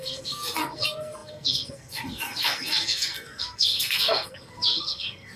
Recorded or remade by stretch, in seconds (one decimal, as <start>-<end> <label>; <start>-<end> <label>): 0.0-5.4 remade